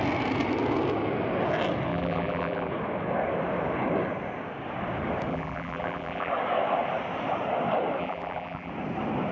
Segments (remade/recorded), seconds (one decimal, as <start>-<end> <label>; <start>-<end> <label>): 0.0-1.9 recorded; 1.9-2.7 remade; 2.7-5.3 recorded; 5.3-6.3 remade; 6.3-8.0 recorded; 8.0-8.7 remade; 8.7-9.3 recorded